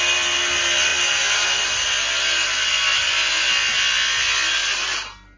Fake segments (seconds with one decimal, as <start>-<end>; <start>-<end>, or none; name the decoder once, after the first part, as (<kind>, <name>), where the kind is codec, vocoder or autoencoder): none